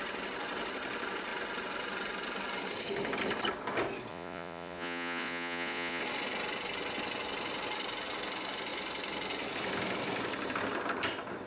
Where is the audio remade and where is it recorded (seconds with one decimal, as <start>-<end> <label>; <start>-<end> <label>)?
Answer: 0.0-4.1 recorded; 4.1-6.0 remade; 6.0-11.5 recorded